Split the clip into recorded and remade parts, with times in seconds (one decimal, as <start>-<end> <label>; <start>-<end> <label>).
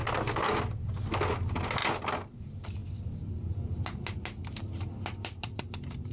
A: 0.0-6.1 recorded